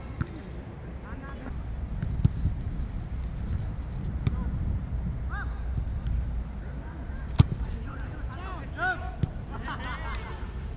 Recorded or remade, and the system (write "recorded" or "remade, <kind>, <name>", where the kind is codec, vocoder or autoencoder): recorded